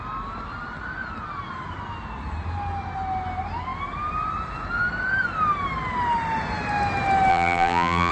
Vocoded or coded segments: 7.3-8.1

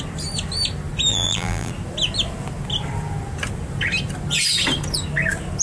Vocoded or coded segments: 1.1-1.7

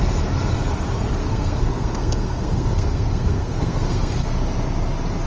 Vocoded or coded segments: 1.2-4.3

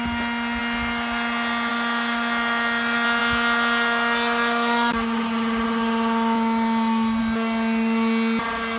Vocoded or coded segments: none